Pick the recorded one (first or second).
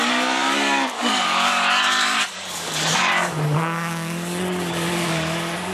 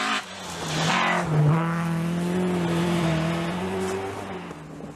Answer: second